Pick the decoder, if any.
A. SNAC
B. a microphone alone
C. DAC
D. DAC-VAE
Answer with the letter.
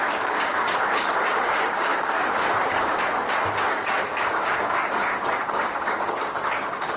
C